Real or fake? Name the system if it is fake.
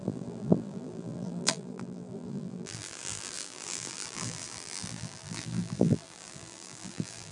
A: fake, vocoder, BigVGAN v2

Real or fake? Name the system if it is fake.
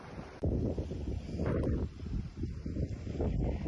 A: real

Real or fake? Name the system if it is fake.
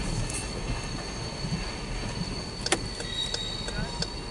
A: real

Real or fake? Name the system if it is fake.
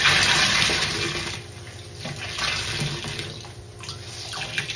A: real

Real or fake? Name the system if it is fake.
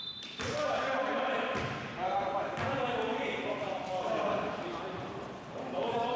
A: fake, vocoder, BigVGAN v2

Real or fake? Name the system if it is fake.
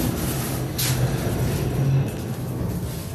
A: real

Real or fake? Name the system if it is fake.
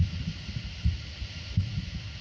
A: real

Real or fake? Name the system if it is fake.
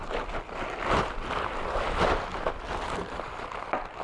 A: real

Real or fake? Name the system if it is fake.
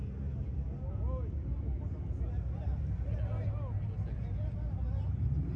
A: real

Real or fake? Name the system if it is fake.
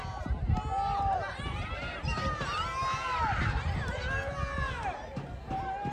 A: real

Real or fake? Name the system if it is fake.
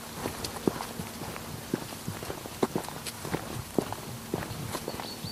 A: real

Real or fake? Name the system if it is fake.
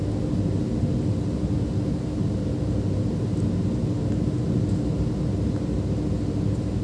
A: real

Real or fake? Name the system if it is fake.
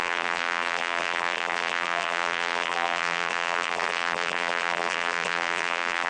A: fake, vocoder, BigVGAN v2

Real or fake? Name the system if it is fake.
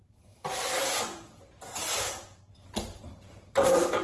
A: fake, vocoder, BigVGAN v2